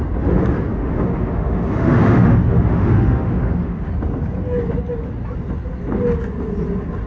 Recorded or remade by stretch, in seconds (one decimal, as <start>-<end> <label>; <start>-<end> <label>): 0.0-0.7 recorded; 0.7-3.9 remade; 3.9-7.1 recorded